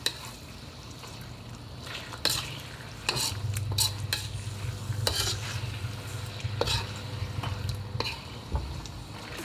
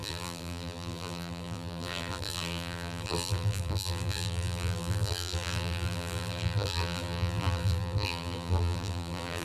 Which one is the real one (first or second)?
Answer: first